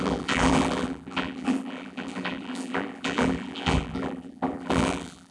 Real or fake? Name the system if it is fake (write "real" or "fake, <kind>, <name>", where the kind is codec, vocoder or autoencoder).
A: fake, vocoder, BigVGAN v2